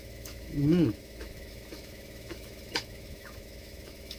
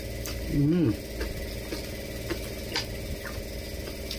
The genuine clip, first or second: second